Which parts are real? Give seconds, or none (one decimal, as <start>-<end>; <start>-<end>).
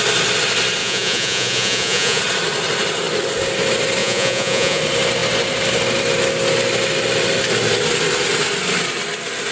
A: 0.0-0.8; 2.2-4.0; 4.8-9.5